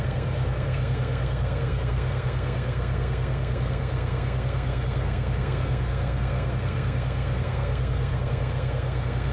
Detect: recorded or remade remade